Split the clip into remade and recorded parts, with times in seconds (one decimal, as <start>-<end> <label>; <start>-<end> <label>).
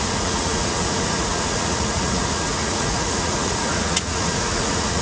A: 0.0-5.0 remade